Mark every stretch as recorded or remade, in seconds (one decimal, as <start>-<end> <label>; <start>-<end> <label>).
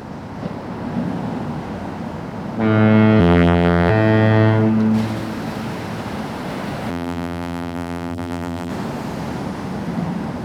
0.0-3.2 recorded; 3.2-3.9 remade; 3.9-6.9 recorded; 6.9-8.7 remade; 8.7-10.4 recorded